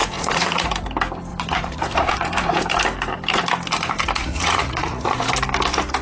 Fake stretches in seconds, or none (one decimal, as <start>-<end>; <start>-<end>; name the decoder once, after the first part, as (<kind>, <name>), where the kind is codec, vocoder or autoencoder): 0.0-0.7 (vocoder, Vocos); 1.3-2.6; 4.2-5.3